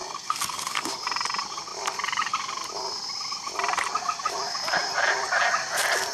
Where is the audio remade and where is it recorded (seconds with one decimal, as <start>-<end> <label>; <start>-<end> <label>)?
0.0-0.9 remade; 0.9-6.1 recorded